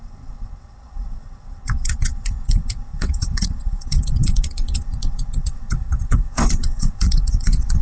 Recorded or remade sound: remade